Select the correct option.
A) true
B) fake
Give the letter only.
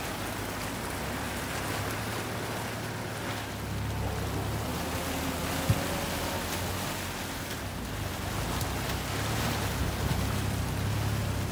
A